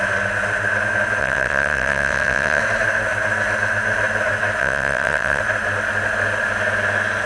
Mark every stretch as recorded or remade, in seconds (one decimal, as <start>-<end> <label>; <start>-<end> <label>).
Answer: 0.0-1.2 recorded; 1.2-2.6 remade; 2.6-4.6 recorded; 4.6-5.4 remade; 5.4-7.3 recorded